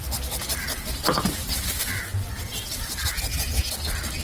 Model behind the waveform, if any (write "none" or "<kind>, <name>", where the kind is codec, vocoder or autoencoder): none